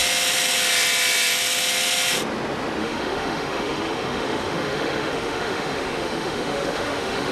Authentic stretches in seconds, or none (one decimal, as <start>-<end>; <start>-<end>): 0.0-2.8